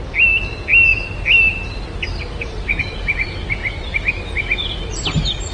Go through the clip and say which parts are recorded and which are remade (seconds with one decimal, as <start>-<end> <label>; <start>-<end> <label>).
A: 0.0-3.6 recorded; 3.6-4.9 remade; 4.9-5.5 recorded